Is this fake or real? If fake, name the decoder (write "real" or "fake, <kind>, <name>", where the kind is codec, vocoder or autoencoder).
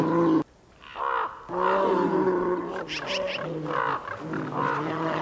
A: fake, vocoder, BigVGAN v2